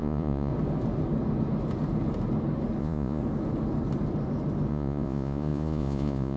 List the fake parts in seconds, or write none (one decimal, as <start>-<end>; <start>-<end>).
0.0-0.5; 2.8-3.2; 4.7-6.4